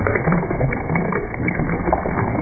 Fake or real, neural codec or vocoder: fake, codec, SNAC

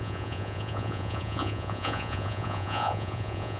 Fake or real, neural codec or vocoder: fake, vocoder, Vocos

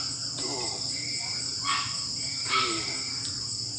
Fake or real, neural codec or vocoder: real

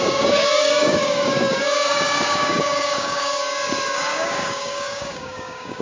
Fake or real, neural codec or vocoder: fake, codec, DAC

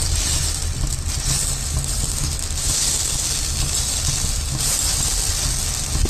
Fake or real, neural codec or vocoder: real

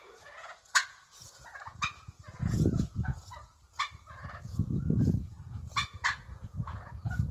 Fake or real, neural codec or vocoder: fake, vocoder, Vocos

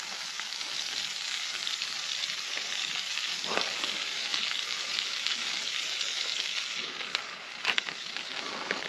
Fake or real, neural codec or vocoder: fake, codec, DAC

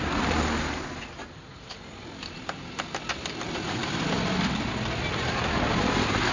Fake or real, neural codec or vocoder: real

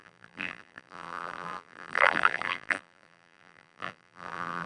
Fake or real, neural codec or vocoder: fake, vocoder, BigVGAN v2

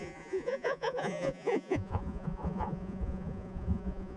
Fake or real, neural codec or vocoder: fake, vocoder, Vocos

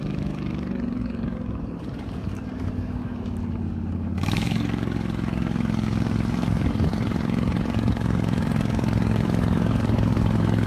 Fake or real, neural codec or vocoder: fake, codec, DAC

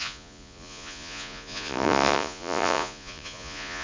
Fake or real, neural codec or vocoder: fake, vocoder, Vocos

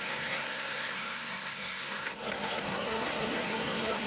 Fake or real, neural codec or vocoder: fake, codec, SNAC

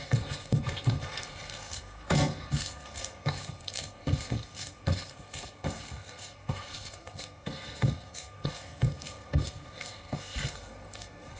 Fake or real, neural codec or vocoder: fake, codec, SNAC